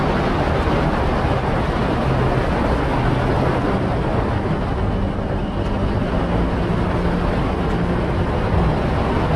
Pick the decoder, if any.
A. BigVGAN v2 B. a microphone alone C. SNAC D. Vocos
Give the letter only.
B